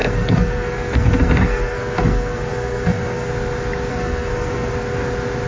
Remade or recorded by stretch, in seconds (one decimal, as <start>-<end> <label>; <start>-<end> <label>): 0.0-3.3 remade; 3.3-3.9 recorded; 3.9-4.7 remade; 4.7-5.5 recorded